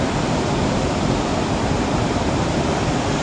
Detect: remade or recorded remade